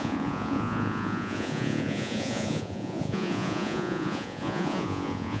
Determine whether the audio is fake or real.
fake